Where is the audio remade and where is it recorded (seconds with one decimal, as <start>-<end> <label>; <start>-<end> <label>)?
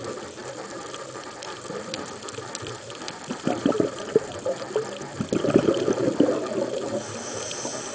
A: 0.0-0.4 recorded; 0.4-4.1 remade; 4.1-7.9 recorded